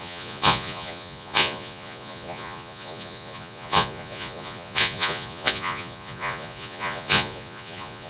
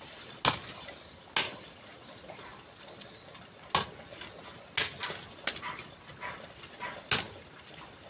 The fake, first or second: first